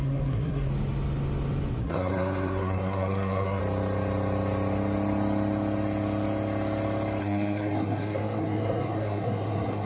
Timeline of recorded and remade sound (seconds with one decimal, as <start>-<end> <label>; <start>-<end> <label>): 0.0-0.7 remade; 0.7-1.8 recorded; 1.8-3.6 remade; 3.6-7.2 recorded; 7.2-9.9 remade